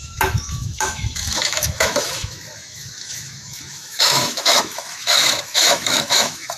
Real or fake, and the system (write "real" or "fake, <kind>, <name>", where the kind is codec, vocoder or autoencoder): fake, autoencoder, DAC-VAE